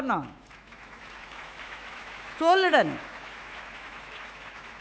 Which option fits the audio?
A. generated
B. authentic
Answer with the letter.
A